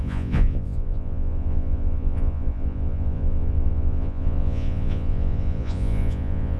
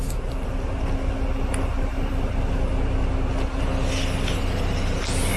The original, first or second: second